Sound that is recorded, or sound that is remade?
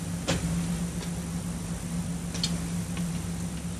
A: recorded